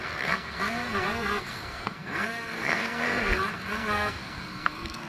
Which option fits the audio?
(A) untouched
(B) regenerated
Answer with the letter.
B